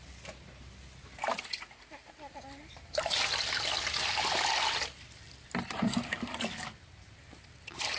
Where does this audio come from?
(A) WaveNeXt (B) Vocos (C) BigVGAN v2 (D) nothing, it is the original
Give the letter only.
D